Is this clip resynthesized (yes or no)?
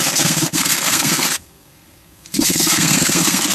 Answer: yes